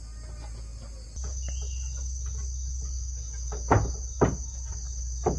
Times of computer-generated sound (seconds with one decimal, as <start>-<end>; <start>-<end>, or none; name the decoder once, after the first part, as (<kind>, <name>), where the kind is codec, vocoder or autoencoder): none